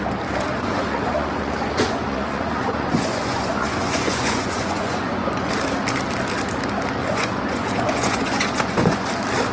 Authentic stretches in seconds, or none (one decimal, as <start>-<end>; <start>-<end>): 0.0-0.5; 5.5-7.0; 9.1-9.5